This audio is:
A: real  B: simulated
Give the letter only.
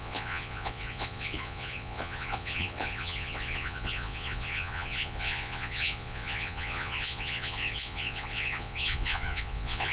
B